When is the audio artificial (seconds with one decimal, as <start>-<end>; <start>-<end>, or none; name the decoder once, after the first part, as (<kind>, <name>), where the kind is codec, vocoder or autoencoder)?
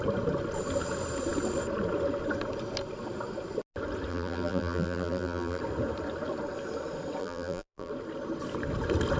4.1-5.6 (vocoder, BigVGAN v2); 7.2-7.9